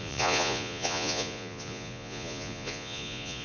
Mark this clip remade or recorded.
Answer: remade